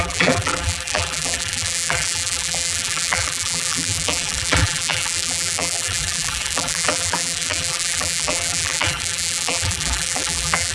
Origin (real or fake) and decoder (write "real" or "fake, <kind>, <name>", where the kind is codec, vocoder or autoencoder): fake, vocoder, BigVGAN v2